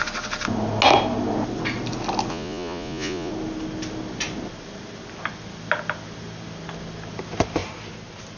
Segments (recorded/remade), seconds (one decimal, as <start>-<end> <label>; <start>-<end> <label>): 0.0-2.3 recorded; 2.3-3.3 remade; 3.3-8.4 recorded